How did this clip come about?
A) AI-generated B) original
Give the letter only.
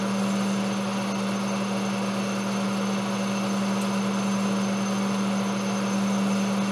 B